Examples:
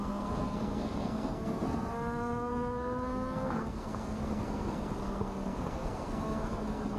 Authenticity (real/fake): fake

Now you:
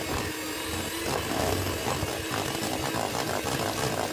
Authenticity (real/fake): real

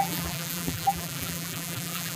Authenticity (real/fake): fake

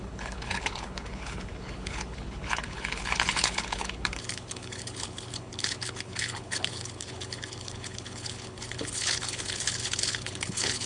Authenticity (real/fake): fake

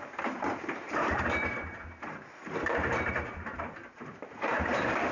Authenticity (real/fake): fake